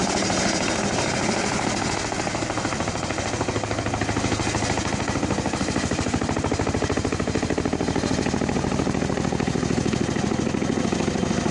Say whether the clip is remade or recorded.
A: recorded